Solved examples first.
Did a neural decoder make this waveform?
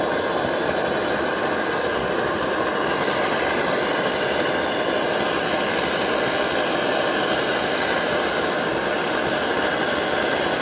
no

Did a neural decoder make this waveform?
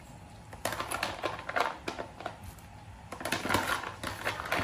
no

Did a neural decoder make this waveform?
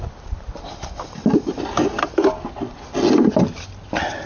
no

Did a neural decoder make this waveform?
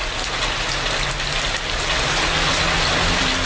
no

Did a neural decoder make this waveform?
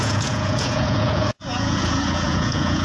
yes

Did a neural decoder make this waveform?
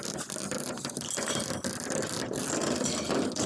no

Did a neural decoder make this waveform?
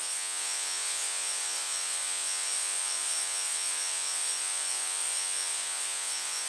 yes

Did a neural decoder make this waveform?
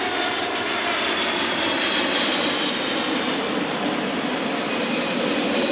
no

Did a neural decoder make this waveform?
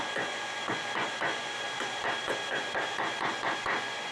yes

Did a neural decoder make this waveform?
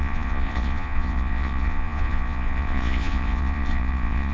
yes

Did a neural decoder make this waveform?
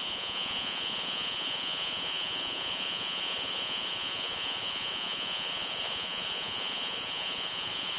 yes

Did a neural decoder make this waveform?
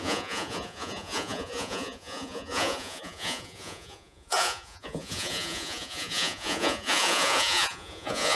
yes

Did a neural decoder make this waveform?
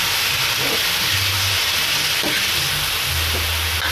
no